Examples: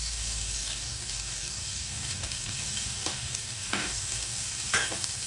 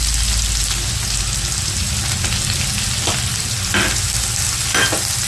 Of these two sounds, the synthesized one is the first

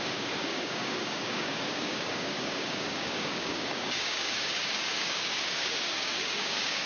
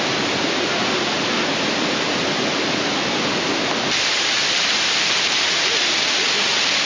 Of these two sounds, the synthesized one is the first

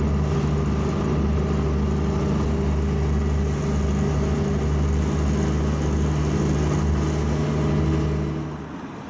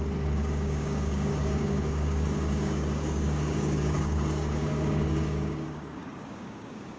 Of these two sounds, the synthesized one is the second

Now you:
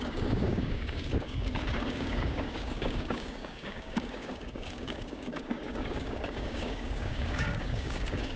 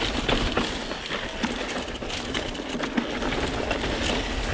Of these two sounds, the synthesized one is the first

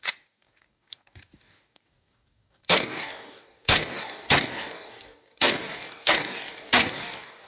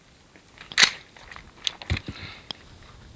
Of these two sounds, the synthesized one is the first